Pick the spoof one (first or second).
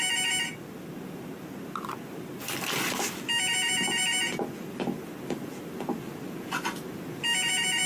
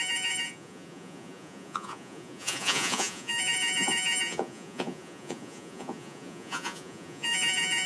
second